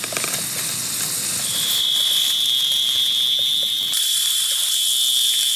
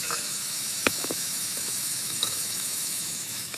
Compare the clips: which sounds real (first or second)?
first